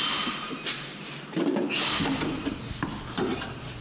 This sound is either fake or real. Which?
fake